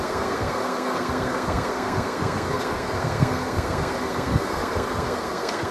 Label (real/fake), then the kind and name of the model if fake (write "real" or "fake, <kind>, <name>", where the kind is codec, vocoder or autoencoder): fake, codec, SNAC